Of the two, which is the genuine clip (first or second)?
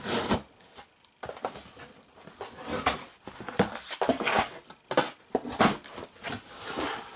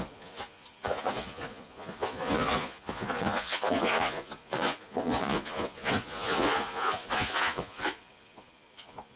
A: first